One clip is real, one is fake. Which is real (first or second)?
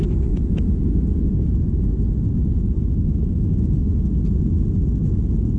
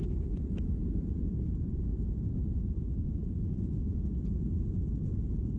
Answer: first